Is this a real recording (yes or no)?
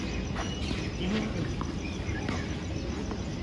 yes